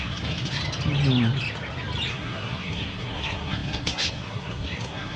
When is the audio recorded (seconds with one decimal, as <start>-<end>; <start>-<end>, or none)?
0.6-2.1